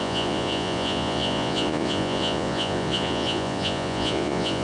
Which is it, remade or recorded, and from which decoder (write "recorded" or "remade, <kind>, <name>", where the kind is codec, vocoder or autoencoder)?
remade, vocoder, Vocos